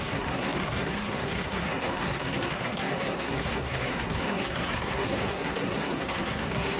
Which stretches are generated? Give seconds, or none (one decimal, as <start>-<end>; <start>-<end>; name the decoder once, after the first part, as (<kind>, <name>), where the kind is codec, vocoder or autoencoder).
0.0-6.8 (codec, SNAC)

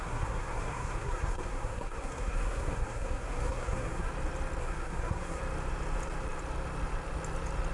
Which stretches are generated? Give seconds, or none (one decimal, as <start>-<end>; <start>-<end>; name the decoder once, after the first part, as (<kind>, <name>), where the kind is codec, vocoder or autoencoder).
0.0-4.1 (codec, SNAC); 4.6-5.4